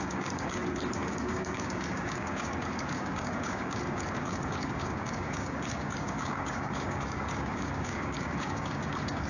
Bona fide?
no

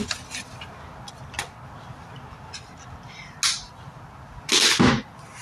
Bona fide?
yes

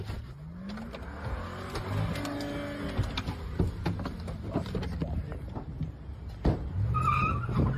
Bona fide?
yes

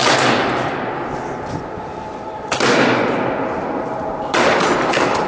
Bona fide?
yes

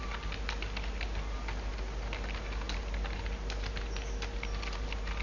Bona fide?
yes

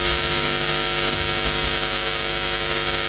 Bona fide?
no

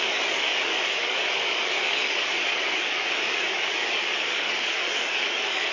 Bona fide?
no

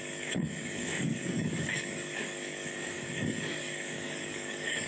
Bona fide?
no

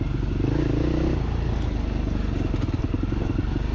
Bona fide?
yes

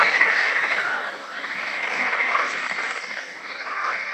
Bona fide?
no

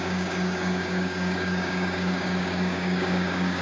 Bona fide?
no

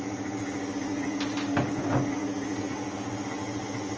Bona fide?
yes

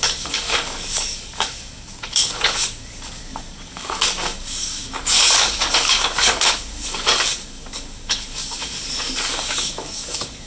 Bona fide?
no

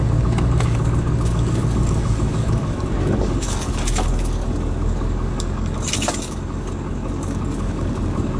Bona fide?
no